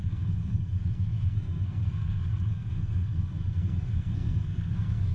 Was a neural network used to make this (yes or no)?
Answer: yes